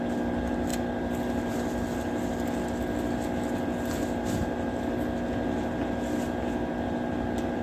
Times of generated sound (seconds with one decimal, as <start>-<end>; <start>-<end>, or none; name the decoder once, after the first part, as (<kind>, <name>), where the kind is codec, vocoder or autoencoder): none